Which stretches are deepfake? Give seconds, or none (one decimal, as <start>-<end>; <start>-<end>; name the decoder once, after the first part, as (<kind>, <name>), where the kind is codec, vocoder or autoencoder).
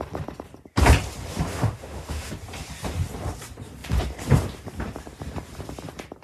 1.5-2.3 (autoencoder, DAC-VAE)